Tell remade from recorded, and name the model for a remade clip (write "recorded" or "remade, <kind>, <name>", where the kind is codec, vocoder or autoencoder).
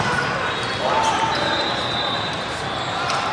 recorded